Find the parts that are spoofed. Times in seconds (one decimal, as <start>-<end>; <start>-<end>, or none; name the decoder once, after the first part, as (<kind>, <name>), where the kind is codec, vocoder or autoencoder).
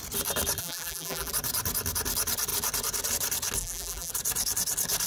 0.6-1.3 (vocoder, BigVGAN v2); 3.6-4.1